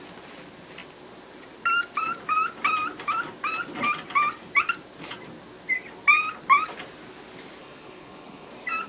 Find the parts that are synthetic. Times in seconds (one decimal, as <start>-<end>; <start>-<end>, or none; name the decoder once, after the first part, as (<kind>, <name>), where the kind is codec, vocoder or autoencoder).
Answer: 7.6-8.5 (codec, HILCodec)